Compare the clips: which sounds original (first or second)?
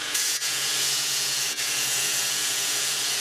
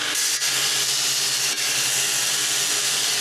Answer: second